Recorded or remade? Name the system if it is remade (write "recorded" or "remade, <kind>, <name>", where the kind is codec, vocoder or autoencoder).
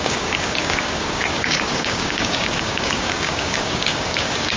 remade, codec, DAC